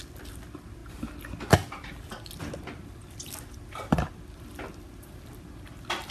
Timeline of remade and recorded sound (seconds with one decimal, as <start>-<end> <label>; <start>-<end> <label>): 0.0-6.1 recorded